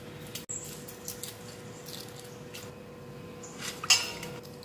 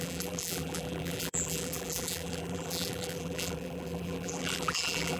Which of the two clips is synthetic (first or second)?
second